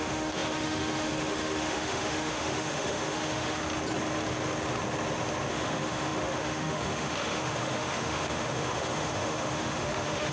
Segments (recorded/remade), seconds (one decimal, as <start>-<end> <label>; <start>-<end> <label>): 0.0-3.6 remade; 3.6-5.5 recorded; 5.5-10.3 remade